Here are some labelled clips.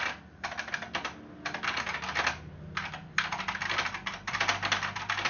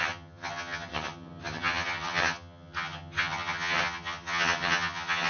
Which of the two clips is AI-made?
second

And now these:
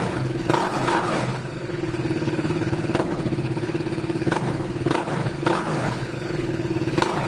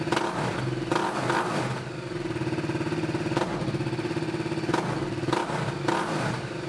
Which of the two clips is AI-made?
first